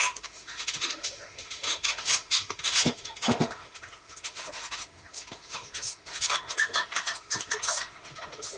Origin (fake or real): fake